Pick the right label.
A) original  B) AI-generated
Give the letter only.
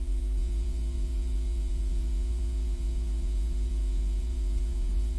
B